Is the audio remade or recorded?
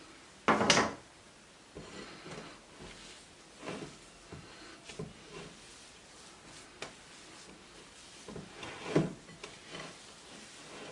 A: recorded